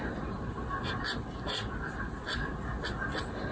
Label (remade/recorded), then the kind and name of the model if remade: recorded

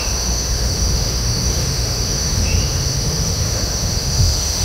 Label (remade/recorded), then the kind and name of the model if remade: remade, autoencoder, DAC-VAE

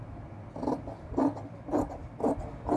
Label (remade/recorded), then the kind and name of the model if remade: recorded